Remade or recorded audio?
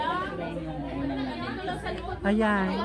recorded